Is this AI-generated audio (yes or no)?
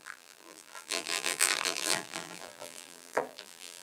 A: yes